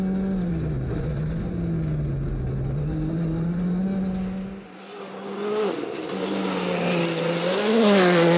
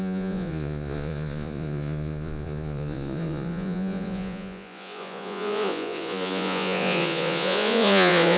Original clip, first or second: first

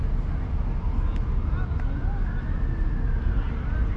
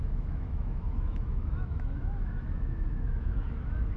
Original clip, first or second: first